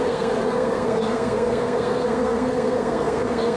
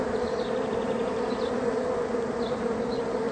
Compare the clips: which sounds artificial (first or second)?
first